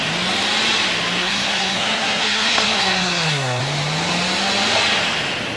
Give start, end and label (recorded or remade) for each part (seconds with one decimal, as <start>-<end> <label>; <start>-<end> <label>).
0.0-1.2 recorded; 1.2-3.6 remade; 3.6-5.6 recorded

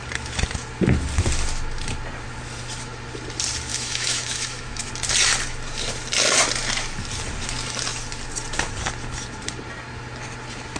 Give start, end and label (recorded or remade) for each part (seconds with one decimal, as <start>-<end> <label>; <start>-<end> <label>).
0.0-3.7 recorded; 3.7-4.9 remade; 4.9-10.8 recorded

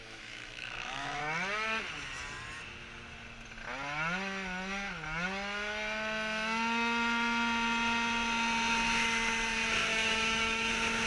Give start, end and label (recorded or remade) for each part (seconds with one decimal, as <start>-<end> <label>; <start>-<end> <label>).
0.0-1.2 remade; 1.2-9.9 recorded; 9.9-10.7 remade; 10.7-11.1 recorded